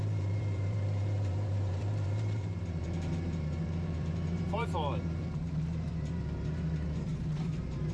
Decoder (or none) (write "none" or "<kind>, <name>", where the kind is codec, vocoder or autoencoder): vocoder, BigVGAN v2